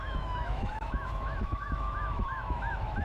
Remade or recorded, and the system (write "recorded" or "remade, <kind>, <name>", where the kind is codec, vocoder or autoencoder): remade, autoencoder, DAC-VAE